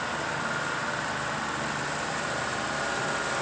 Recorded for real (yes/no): yes